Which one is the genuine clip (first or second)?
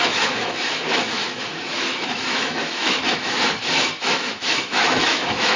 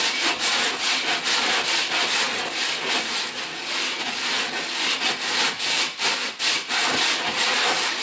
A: second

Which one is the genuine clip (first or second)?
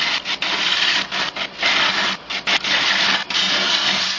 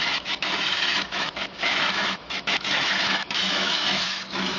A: first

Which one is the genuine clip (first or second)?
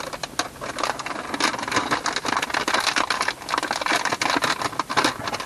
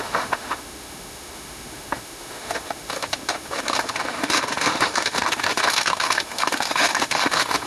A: first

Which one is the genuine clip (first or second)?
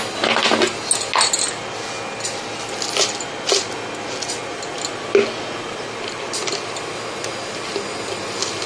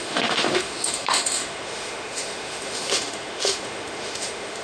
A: first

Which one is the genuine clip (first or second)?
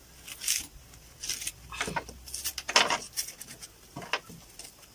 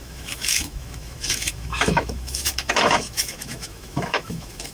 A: first